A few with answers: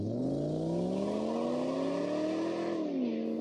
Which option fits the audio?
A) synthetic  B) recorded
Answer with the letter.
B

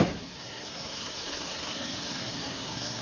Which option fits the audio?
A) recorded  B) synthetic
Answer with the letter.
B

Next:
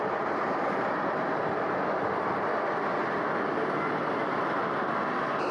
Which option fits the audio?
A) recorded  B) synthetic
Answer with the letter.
A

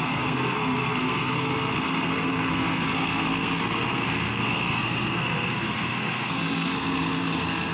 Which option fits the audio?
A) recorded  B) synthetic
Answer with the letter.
B